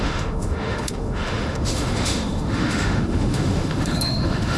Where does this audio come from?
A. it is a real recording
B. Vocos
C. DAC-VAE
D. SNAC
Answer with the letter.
C